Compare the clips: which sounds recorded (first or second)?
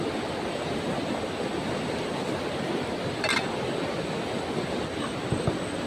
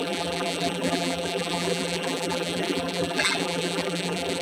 first